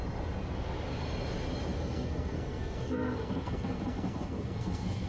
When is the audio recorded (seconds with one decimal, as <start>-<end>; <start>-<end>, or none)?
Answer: 0.0-1.7